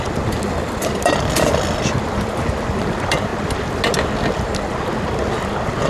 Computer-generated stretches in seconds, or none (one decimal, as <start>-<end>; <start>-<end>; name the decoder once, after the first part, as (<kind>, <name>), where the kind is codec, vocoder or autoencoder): none